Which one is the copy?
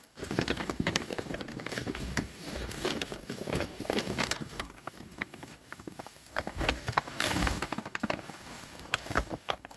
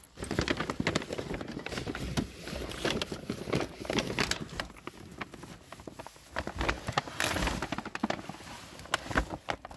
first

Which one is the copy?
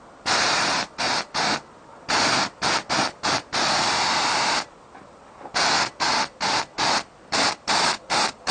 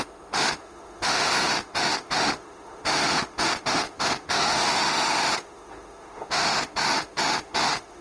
second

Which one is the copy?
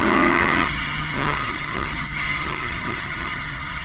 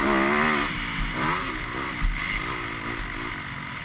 first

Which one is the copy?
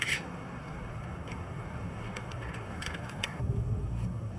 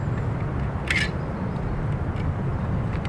first